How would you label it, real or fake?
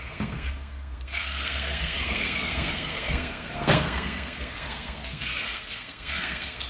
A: fake